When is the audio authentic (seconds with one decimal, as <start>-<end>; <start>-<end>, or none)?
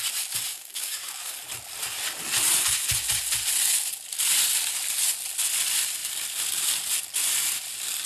0.0-0.5; 1.3-8.1